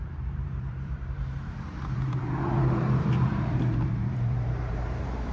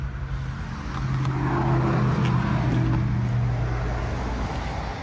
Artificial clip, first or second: first